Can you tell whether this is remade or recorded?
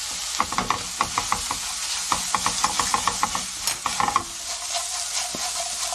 recorded